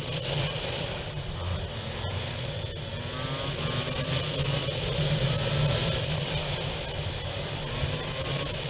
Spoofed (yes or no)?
no